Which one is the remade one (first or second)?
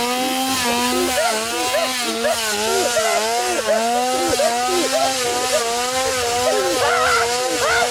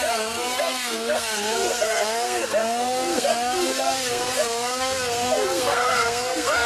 second